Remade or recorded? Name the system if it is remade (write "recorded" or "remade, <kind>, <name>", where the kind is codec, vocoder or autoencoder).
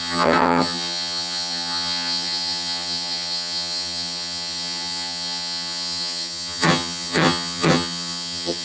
remade, vocoder, HiFi-GAN